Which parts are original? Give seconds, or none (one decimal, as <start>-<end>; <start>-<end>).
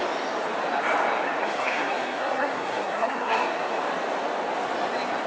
0.0-1.4; 3.8-5.3